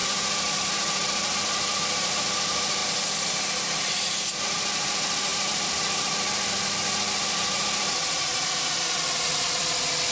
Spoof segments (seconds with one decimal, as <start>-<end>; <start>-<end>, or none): 0.6-2.8; 4.4-10.1